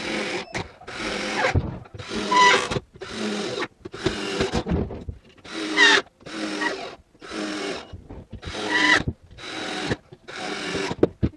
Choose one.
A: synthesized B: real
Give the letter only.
B